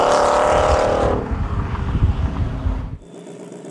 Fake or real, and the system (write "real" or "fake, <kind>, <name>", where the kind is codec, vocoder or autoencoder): fake, vocoder, BigVGAN v2